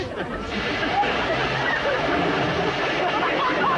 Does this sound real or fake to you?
real